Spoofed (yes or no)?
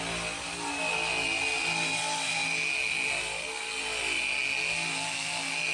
no